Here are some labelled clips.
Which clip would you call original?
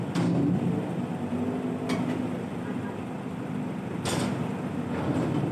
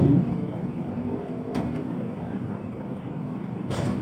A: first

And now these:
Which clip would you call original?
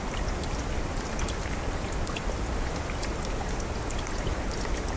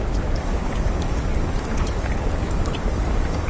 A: first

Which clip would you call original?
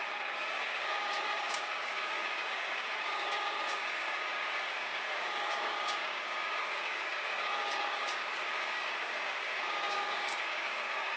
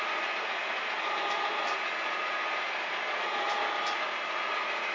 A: second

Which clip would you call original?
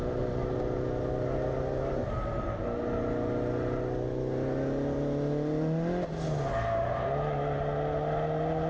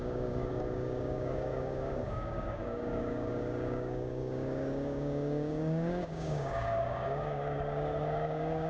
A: first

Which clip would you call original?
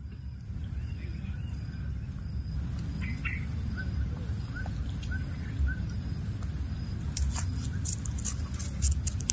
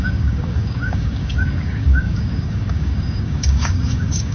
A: first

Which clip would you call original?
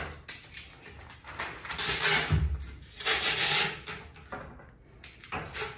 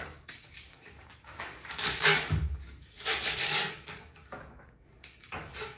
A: first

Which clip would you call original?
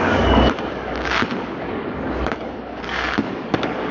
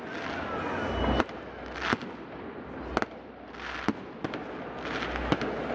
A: second